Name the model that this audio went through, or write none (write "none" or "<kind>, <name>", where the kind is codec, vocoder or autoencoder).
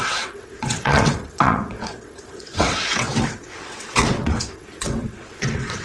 vocoder, WaveNeXt